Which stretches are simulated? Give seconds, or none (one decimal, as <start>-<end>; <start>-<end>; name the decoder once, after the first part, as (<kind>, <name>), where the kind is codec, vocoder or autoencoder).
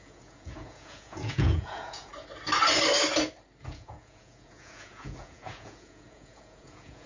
0.0-2.1 (vocoder, Vocos); 3.6-7.1